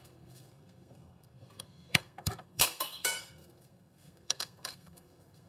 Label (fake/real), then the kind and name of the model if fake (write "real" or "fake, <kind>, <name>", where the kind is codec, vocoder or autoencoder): fake, codec, SNAC